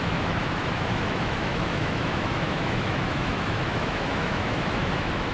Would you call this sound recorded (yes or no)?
no